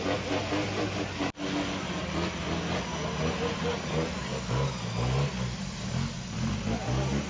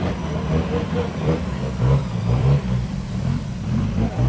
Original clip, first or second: first